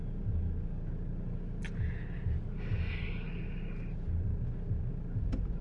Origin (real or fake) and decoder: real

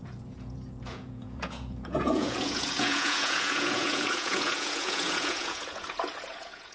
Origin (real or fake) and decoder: fake, vocoder, Vocos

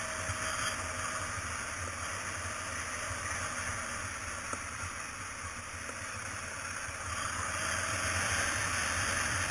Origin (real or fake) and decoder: real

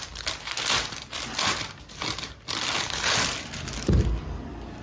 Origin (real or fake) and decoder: real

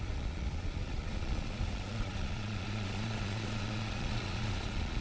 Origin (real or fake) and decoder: fake, vocoder, Vocos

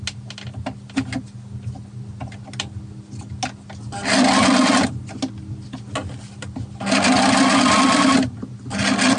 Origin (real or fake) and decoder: real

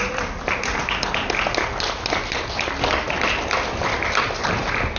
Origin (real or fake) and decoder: real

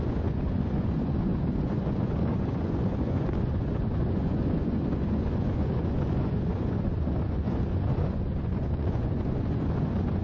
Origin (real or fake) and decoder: fake, vocoder, Vocos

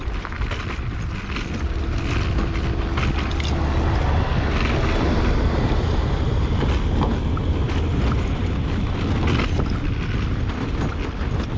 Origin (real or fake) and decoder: real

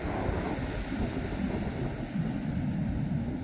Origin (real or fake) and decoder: real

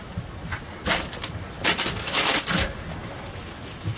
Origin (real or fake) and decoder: real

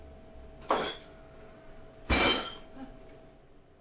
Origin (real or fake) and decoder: real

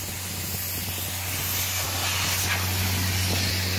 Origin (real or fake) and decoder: real